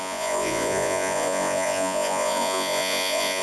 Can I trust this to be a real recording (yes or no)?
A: no